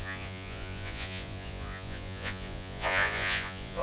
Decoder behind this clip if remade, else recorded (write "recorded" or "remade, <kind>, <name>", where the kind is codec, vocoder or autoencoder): remade, vocoder, Vocos